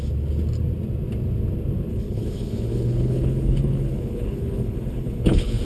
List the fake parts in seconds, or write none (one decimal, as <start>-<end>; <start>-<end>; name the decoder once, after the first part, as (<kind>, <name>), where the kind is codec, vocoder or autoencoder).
1.9-5.6 (codec, HILCodec)